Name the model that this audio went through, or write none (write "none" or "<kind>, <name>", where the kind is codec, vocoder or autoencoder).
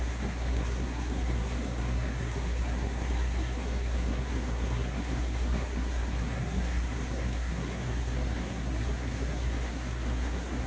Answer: codec, SNAC